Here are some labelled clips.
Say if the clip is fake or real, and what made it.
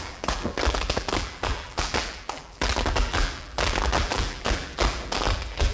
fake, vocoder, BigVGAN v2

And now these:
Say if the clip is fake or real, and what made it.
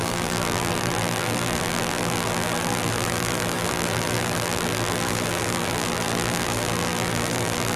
fake, vocoder, BigVGAN v2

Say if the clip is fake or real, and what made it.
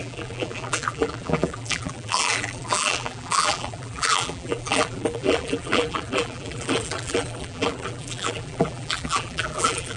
fake, vocoder, BigVGAN v2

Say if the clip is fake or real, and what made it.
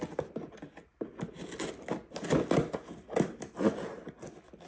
real